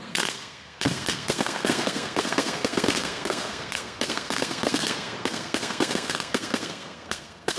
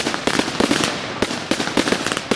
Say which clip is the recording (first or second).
second